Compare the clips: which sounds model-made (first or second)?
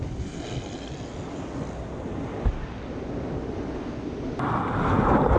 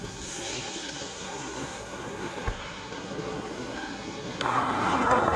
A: second